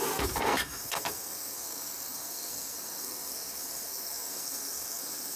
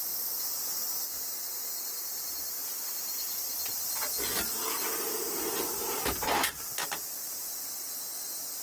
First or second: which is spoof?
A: first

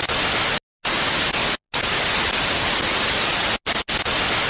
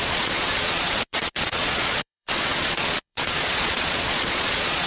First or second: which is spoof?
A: second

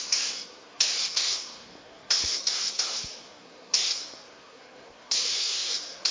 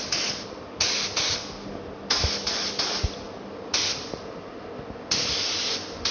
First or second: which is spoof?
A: first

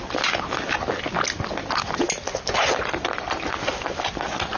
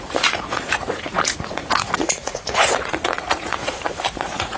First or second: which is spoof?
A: second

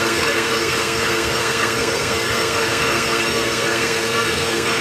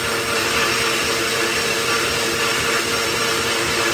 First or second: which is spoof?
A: first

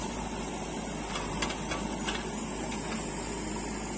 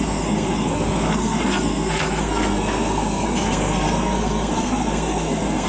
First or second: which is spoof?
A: second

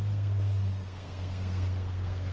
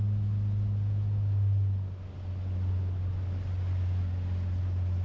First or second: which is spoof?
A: first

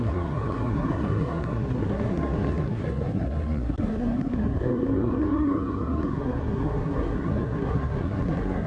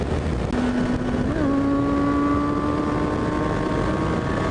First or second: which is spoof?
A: first